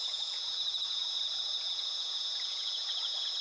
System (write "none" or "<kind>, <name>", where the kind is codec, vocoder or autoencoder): vocoder, Vocos